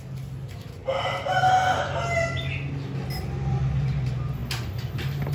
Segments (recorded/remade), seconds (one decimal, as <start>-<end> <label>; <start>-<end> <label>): 0.0-5.3 recorded